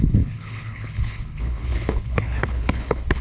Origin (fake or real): fake